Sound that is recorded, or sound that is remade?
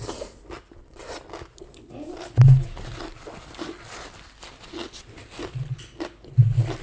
recorded